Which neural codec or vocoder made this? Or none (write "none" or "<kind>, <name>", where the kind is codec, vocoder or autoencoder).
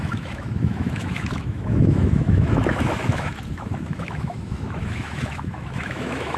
autoencoder, DAC-VAE